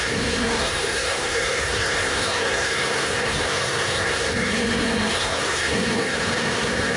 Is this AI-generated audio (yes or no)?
yes